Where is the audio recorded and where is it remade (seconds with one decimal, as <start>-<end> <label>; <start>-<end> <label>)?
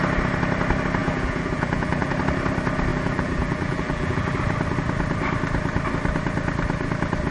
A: 0.0-1.0 recorded; 1.0-2.2 remade; 2.2-2.9 recorded; 2.9-4.4 remade; 4.4-7.3 recorded